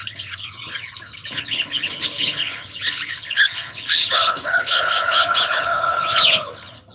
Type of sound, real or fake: fake